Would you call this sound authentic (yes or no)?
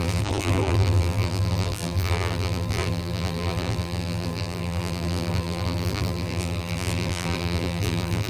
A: no